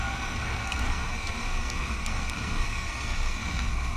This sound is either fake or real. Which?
fake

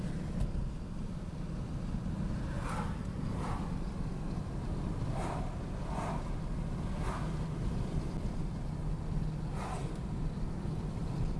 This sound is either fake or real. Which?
real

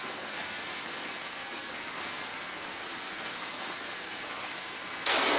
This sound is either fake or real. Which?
fake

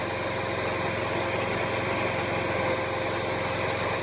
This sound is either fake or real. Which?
real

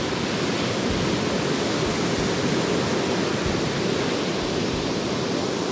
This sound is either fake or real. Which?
real